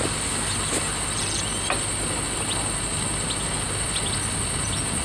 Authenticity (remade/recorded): recorded